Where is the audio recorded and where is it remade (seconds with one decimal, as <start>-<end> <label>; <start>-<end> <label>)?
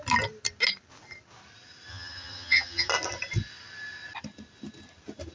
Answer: 0.0-1.9 recorded; 1.9-2.9 remade; 2.9-5.3 recorded